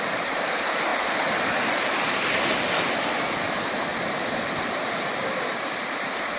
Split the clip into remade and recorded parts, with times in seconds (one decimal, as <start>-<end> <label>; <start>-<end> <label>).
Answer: 0.0-6.4 recorded